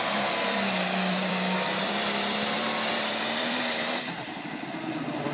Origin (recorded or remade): remade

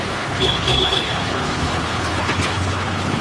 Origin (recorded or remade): remade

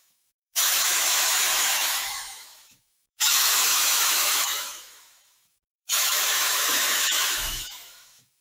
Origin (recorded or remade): remade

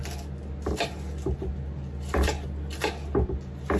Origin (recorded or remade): recorded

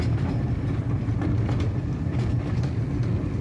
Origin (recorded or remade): recorded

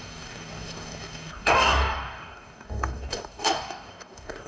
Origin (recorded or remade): remade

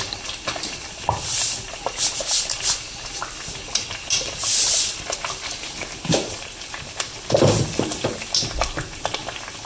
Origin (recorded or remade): recorded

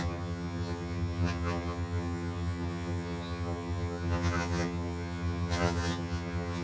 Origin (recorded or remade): remade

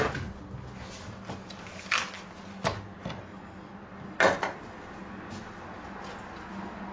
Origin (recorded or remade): recorded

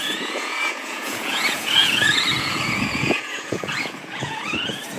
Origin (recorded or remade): remade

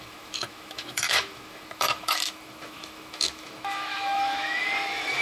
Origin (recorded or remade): remade